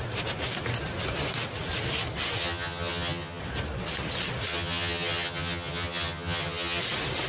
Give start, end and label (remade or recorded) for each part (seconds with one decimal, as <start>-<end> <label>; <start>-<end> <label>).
0.0-2.4 recorded; 2.4-3.4 remade; 3.4-4.5 recorded; 4.5-6.8 remade; 6.8-7.3 recorded